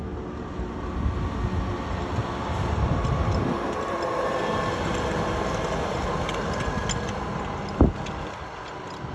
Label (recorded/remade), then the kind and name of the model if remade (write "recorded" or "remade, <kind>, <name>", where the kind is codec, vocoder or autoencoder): recorded